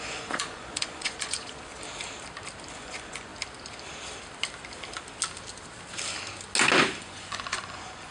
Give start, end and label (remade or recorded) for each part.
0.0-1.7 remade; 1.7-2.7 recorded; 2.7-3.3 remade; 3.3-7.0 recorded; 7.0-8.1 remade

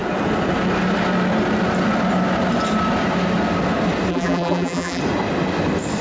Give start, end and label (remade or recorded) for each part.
0.0-4.1 recorded; 4.1-5.0 remade; 5.0-6.0 recorded

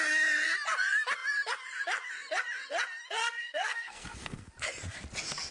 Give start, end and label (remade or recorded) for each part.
0.0-3.2 recorded; 3.2-4.5 remade; 4.5-5.5 recorded

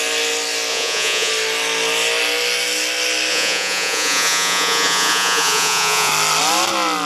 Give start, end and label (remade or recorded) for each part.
0.0-0.7 recorded; 0.7-1.3 remade; 1.3-3.3 recorded; 3.3-6.1 remade; 6.1-7.1 recorded

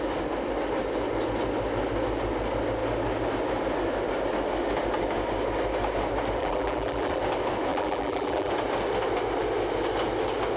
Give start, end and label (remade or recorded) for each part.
0.0-6.4 recorded; 6.4-7.2 remade; 7.2-7.7 recorded; 7.7-8.5 remade; 8.5-10.6 recorded

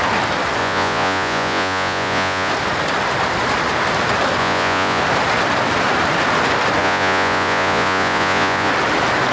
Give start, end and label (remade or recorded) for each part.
0.0-0.6 recorded; 0.6-2.5 remade; 2.5-4.4 recorded; 4.4-5.0 remade; 5.0-6.8 recorded; 6.8-8.7 remade; 8.7-9.3 recorded

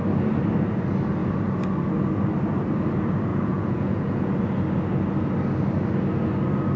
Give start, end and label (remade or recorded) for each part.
0.0-3.3 recorded; 3.3-4.3 remade; 4.3-6.8 recorded